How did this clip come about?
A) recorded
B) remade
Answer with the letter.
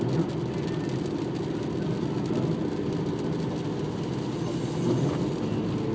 A